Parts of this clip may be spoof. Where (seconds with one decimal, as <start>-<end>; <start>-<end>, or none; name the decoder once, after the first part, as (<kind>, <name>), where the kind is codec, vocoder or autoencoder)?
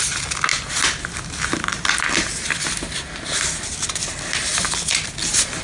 0.5-1.9 (vocoder, BigVGAN v2)